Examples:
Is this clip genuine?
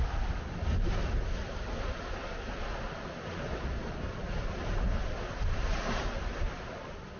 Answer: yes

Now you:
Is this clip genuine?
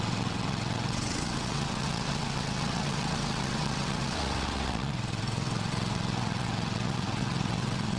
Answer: no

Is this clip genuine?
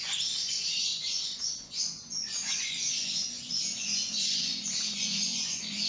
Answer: no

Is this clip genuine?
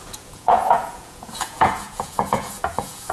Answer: no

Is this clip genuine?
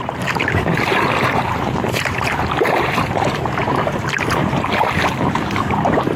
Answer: no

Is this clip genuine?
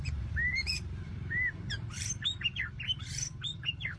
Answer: no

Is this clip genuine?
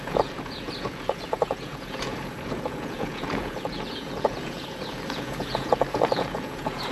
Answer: no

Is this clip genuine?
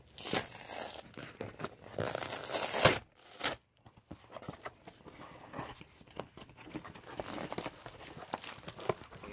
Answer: yes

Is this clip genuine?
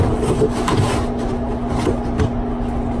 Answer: yes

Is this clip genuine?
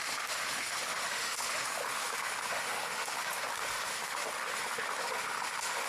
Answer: no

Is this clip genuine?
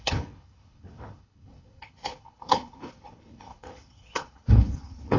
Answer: no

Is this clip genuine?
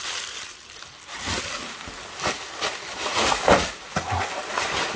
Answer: yes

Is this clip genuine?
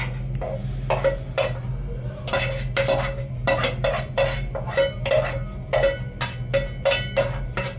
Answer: yes